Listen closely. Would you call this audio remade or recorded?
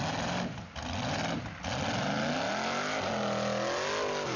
recorded